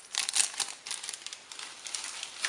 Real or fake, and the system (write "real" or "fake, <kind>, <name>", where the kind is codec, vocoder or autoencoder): real